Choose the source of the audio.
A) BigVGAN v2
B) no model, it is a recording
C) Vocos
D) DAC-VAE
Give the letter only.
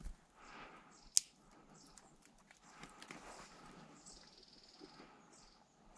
B